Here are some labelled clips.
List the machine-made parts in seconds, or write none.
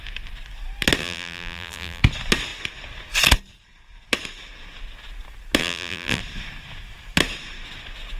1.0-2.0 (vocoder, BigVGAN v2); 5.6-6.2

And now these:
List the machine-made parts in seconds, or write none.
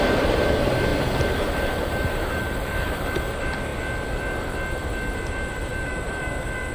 0.9-3.2 (vocoder, BigVGAN v2); 5.7-6.3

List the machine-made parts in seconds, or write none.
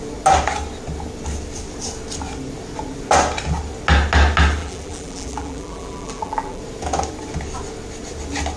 4.6-6.6 (vocoder, BigVGAN v2)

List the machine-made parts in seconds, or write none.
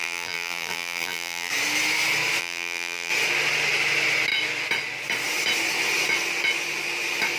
0.0-1.5 (vocoder, BigVGAN v2); 2.4-3.1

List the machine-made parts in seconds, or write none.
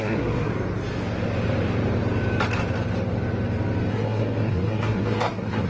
0.0-0.5 (codec, SNAC); 3.9-5.7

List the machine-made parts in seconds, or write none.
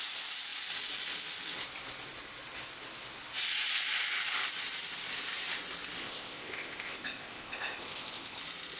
6.0-8.4 (codec, ZipCodec)